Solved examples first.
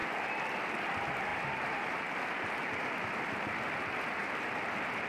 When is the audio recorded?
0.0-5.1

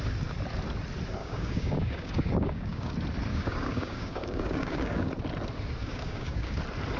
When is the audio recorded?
0.0-1.2; 2.9-3.3; 5.1-5.8; 6.6-7.0

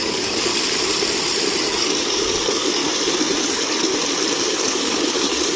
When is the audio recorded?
0.5-1.6; 2.8-3.4; 3.9-4.5

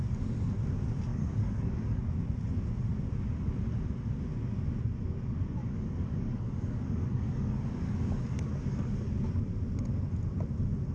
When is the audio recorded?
0.0-1.1; 2.0-5.6; 9.1-10.9

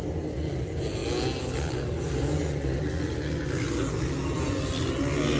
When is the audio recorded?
0.0-5.4

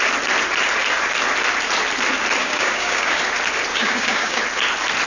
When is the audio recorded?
0.0-2.4; 3.2-3.7; 4.4-5.1

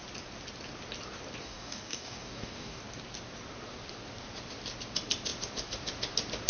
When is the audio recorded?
0.0-1.4; 2.8-6.5